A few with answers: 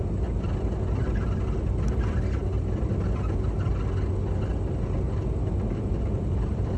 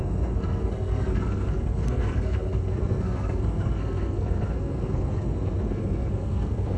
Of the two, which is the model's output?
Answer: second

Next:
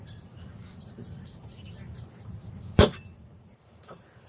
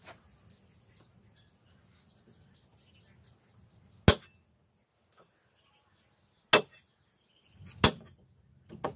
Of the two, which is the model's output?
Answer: first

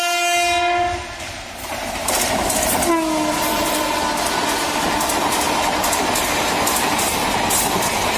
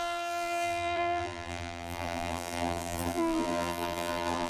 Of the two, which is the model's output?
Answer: second